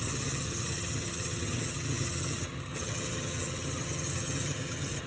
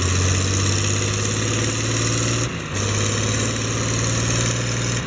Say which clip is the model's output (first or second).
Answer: first